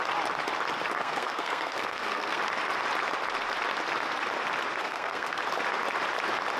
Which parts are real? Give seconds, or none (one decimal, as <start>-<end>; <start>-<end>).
0.0-1.0; 2.4-4.8; 5.4-6.6

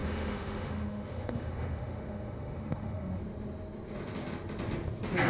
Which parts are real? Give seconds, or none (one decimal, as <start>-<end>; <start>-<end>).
3.2-5.3